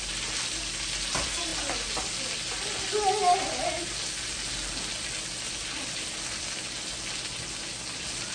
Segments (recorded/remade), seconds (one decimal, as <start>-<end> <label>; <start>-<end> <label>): 0.0-8.3 recorded